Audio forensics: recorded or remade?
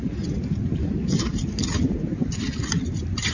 recorded